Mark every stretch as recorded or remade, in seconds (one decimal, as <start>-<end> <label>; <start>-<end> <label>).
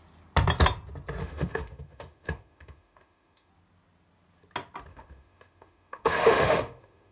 0.0-1.2 recorded; 1.2-3.5 remade; 3.5-4.9 recorded; 4.9-7.1 remade